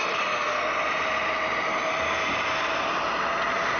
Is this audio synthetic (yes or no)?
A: no